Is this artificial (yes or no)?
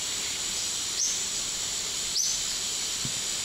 no